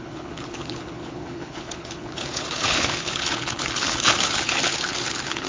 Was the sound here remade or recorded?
remade